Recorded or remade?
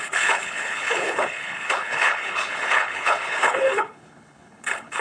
remade